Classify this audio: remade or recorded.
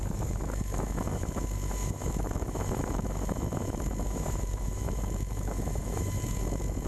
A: remade